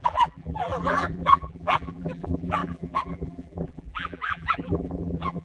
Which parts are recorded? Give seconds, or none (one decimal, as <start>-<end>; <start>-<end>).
none